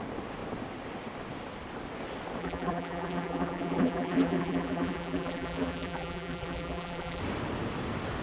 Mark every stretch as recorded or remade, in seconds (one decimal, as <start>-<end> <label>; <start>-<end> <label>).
0.0-2.4 recorded; 2.4-7.2 remade; 7.2-8.2 recorded